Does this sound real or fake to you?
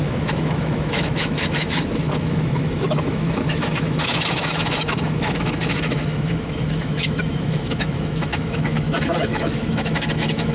fake